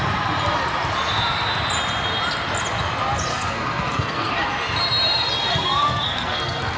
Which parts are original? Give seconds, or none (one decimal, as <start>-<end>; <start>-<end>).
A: 0.0-3.3; 4.3-5.5